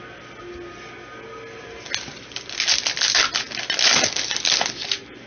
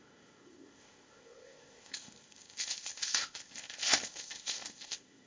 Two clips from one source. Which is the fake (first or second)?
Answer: second